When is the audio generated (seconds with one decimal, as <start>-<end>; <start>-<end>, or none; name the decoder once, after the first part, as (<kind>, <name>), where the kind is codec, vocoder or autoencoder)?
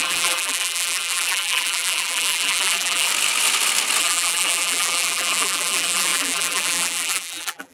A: 0.0-3.1 (vocoder, BigVGAN v2); 4.0-7.7